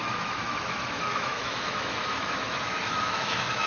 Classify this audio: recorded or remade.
remade